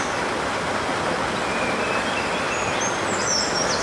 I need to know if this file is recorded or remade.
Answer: recorded